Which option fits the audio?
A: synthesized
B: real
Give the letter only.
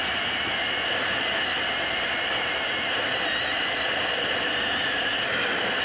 B